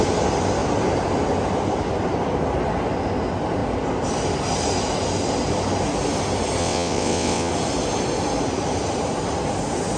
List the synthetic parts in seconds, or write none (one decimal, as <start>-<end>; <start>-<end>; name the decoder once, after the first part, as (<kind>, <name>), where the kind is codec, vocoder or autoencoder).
6.6-7.5 (vocoder, WaveNeXt)